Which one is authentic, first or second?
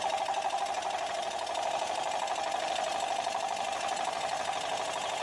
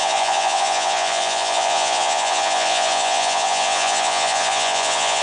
first